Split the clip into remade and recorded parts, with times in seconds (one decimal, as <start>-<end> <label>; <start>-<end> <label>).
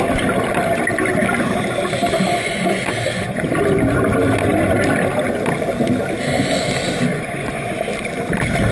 0.0-2.3 recorded; 2.3-3.6 remade; 3.6-7.1 recorded; 7.1-7.7 remade; 7.7-8.7 recorded